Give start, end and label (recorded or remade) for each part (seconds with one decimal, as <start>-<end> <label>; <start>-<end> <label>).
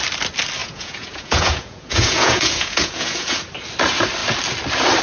0.0-0.6 recorded; 0.6-3.4 remade; 3.4-5.0 recorded